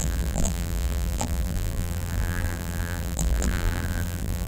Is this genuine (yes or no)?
no